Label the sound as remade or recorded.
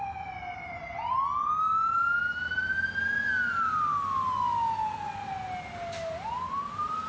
recorded